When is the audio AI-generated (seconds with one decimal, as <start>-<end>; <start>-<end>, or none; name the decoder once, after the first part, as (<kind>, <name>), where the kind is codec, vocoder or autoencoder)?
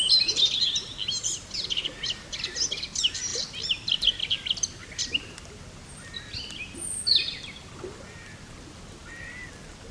none